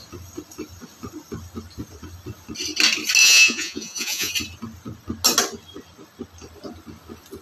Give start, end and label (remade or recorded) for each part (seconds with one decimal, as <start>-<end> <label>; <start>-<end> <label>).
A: 0.0-3.2 recorded; 3.2-4.3 remade; 4.3-7.4 recorded